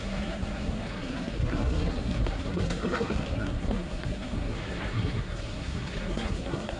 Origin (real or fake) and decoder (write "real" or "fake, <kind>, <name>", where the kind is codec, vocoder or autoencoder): fake, codec, SNAC